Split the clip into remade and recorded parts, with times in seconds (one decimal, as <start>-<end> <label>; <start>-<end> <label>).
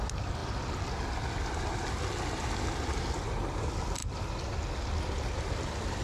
0.0-6.0 recorded